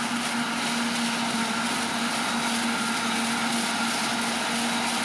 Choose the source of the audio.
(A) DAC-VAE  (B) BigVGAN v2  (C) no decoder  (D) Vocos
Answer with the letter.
C